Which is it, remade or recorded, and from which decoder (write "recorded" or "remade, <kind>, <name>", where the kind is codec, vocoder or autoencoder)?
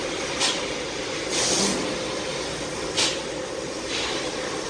recorded